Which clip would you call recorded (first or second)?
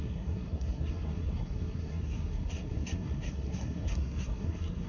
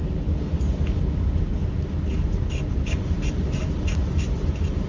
second